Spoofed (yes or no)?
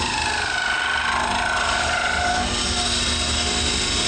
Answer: no